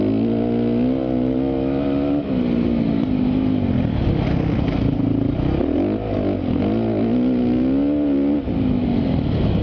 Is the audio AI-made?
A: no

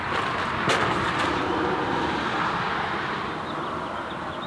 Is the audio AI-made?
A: no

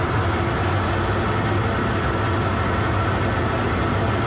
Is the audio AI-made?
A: no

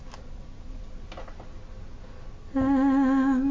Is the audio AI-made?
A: no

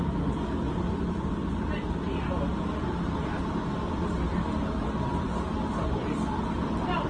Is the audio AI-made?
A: no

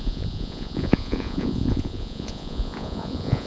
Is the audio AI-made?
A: yes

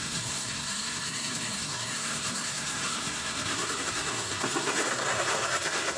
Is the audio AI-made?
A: yes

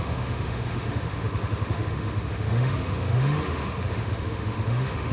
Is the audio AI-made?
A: yes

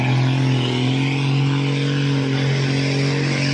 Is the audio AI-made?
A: no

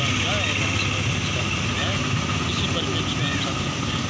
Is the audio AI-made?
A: no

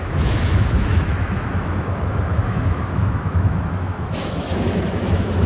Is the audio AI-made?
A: yes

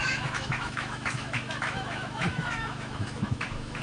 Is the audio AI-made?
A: yes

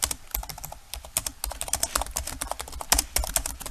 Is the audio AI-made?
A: no